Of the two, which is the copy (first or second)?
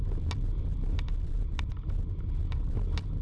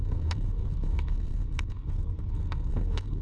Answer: second